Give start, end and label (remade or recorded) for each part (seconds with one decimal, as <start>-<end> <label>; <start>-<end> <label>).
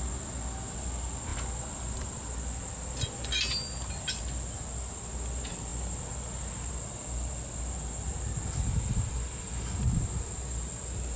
0.0-11.2 recorded